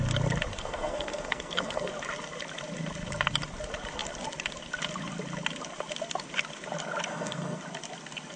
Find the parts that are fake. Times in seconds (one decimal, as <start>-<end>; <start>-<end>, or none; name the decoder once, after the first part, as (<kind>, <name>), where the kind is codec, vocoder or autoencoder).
0.5-1.9 (codec, SNAC); 7.1-7.6